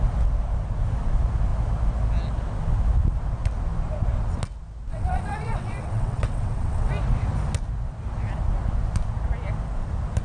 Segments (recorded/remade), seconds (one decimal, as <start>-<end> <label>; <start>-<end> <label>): 0.0-4.9 recorded; 4.9-6.9 remade; 6.9-10.2 recorded